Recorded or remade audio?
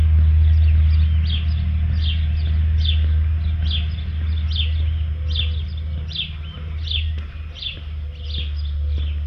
recorded